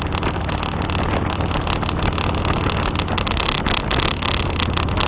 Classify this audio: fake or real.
real